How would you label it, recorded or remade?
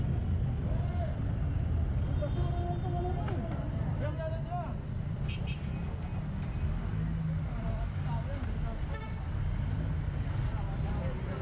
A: recorded